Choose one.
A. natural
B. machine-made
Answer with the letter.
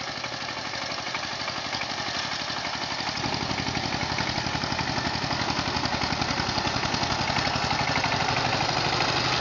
A